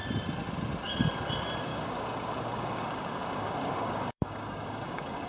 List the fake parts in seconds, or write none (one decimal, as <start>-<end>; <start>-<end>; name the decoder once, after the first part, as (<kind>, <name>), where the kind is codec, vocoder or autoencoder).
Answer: 1.7-5.3 (codec, DAC)